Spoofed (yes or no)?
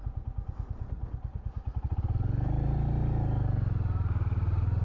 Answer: no